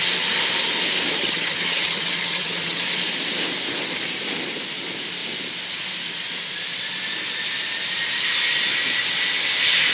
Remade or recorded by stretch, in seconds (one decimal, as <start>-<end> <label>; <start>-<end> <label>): 0.0-1.2 recorded; 1.2-2.8 remade; 2.8-9.9 recorded

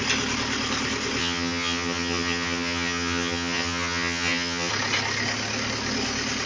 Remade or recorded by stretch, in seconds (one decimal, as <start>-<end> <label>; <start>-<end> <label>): 0.0-1.2 recorded; 1.2-4.7 remade; 4.7-6.5 recorded

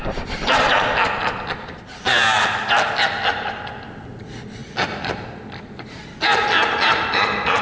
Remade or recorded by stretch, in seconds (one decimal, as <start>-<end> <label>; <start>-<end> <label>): 0.0-7.6 recorded

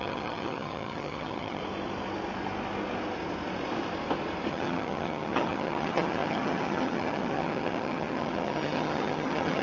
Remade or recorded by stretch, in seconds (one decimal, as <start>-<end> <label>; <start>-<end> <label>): 0.0-1.6 remade; 1.6-4.5 recorded; 4.5-9.6 remade

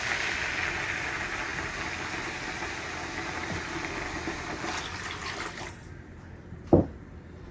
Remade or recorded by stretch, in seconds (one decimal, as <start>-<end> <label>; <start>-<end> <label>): 0.0-7.5 recorded